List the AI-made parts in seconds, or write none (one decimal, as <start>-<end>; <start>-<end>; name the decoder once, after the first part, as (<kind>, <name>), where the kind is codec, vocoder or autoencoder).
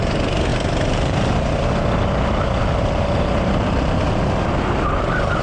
0.5-1.3 (vocoder, BigVGAN v2); 2.6-4.2